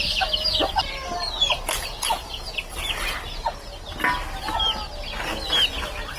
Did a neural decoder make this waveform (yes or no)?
no